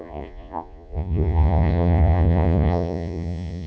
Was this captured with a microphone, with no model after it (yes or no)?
no